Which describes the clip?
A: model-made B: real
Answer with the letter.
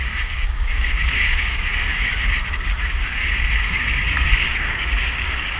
A